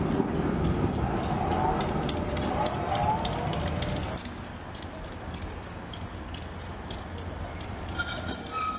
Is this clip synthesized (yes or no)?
no